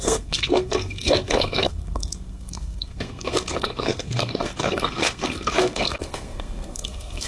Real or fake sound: fake